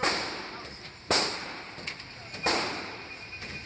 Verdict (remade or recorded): remade